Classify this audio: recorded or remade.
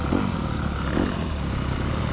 recorded